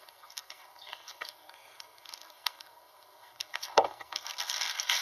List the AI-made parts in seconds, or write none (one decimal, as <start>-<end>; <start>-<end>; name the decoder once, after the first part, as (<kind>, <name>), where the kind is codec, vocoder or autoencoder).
0.0-5.0 (codec, SNAC)